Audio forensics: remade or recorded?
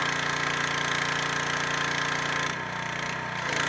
recorded